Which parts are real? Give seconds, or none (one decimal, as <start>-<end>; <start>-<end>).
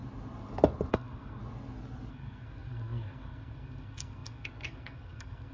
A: 0.0-0.9; 1.4-2.1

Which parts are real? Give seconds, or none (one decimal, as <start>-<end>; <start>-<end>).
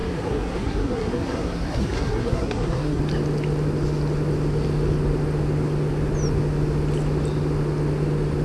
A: 3.0-8.4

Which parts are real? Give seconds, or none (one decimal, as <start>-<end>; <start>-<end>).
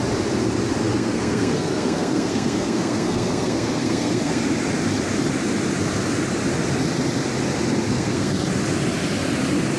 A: 0.0-0.8; 4.4-7.9; 8.4-9.8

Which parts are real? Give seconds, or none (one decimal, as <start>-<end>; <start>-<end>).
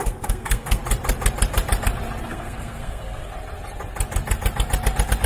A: 0.8-2.2; 3.3-5.3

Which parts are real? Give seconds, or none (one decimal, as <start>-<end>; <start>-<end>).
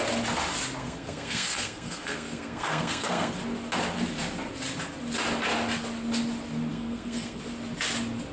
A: 0.0-0.8; 3.3-6.7; 7.4-8.3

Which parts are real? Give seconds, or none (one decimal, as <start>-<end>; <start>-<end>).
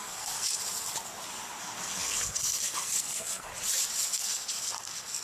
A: 0.6-1.6; 3.5-4.2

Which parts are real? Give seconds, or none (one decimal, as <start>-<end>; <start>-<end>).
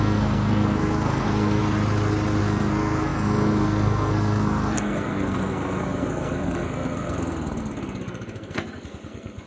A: 1.6-2.4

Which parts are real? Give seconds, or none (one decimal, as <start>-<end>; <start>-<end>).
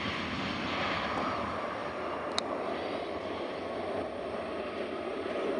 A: 0.0-5.6